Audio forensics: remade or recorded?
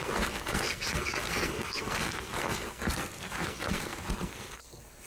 remade